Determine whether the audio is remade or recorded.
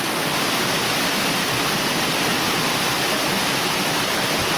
recorded